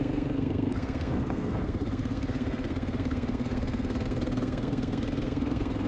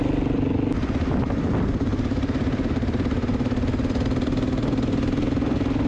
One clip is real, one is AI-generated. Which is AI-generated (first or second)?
first